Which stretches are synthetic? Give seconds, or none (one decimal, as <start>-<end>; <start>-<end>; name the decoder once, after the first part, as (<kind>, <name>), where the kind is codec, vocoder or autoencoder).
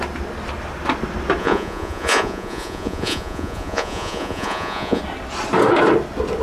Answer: 1.4-5.0 (vocoder, Vocos)